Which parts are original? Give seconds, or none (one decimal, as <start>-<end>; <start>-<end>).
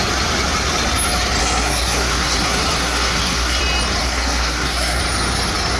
0.0-1.4; 3.6-4.0; 5.0-5.8